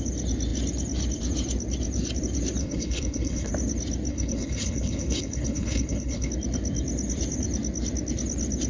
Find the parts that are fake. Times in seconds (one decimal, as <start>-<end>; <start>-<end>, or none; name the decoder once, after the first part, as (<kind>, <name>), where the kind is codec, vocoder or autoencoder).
2.6-3.5 (codec, HILCodec); 4.1-6.3